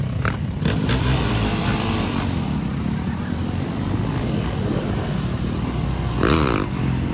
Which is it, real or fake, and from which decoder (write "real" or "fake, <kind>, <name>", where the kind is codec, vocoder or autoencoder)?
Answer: fake, vocoder, BigVGAN v2